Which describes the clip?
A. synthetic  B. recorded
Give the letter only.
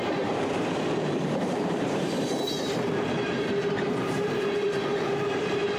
A